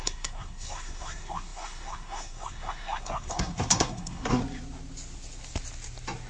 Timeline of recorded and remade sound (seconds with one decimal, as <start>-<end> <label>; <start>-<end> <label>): 0.0-4.4 remade; 4.4-6.3 recorded